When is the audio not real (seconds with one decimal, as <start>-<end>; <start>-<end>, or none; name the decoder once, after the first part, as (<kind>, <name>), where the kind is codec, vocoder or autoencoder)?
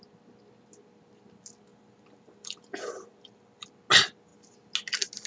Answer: 1.7-3.7 (vocoder, BigVGAN v2)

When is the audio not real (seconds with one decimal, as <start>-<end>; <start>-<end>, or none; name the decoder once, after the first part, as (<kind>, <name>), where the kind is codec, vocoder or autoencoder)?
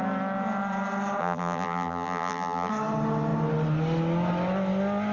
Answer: 1.2-2.7 (vocoder, BigVGAN v2)